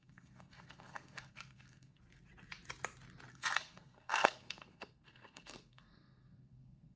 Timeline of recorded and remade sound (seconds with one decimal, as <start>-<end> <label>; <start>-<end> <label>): 0.0-2.0 remade; 2.0-3.3 recorded; 3.3-7.0 remade